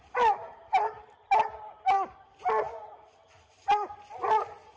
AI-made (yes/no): no